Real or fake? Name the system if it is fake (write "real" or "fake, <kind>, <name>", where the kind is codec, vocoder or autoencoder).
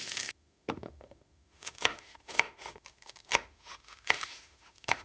fake, autoencoder, DAC-VAE